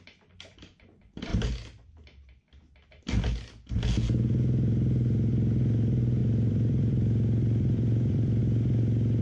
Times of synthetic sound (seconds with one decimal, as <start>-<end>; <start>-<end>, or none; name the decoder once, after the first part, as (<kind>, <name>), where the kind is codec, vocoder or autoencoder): 6.2-8.4 (vocoder, BigVGAN v2)